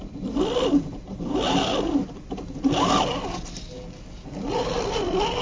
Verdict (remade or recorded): recorded